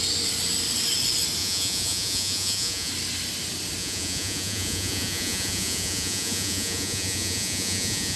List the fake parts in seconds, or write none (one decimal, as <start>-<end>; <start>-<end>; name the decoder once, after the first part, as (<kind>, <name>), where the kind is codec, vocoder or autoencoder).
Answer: 1.4-2.9 (vocoder, Vocos); 3.8-8.2